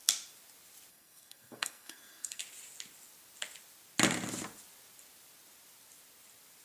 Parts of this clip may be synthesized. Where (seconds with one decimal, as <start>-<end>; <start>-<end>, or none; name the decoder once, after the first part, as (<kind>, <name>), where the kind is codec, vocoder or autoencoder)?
0.9-2.4 (codec, SNAC)